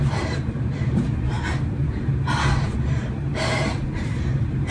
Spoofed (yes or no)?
yes